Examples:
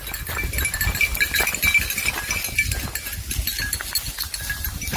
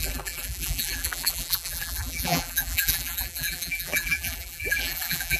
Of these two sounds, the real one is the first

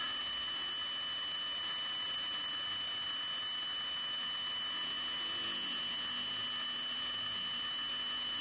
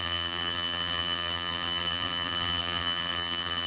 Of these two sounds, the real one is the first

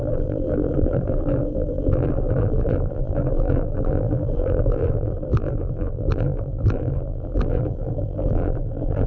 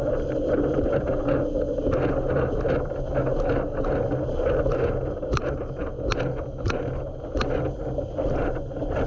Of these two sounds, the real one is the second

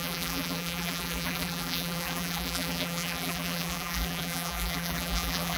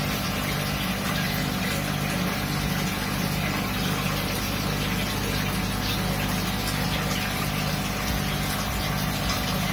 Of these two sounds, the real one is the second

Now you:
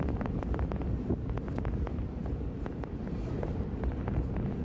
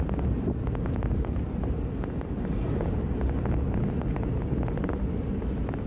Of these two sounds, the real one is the second